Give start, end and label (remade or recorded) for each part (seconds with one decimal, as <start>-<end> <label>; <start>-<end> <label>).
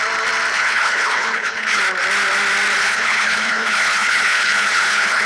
0.0-0.5 recorded; 0.5-1.8 remade; 1.8-2.8 recorded; 2.8-5.3 remade